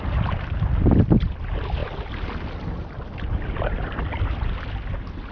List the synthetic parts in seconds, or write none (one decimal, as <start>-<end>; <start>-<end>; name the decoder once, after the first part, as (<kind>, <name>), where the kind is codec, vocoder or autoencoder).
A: none